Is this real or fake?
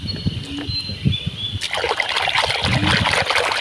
real